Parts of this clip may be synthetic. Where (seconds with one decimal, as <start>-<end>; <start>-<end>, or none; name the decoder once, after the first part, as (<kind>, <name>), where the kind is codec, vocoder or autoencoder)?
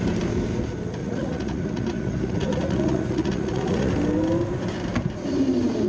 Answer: 1.0-3.9 (vocoder, Vocos)